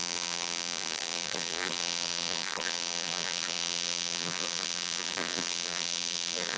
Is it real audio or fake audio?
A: fake